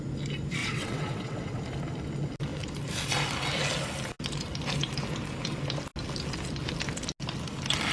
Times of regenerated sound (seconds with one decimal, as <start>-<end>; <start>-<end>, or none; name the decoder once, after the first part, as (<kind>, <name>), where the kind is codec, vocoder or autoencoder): 0.6-1.6 (vocoder, WaveNeXt)

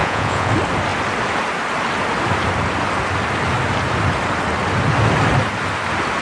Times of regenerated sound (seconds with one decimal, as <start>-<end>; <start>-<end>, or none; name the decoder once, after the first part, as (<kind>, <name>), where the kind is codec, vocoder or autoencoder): 0.0-0.5 (vocoder, Vocos)

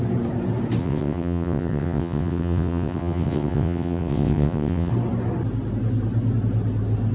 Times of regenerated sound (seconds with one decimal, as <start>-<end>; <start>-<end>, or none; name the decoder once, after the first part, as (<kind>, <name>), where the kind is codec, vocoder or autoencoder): 0.8-4.9 (vocoder, WaveNeXt)